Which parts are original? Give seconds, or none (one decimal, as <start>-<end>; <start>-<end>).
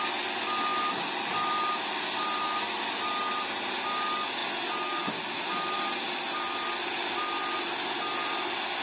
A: 0.0-8.8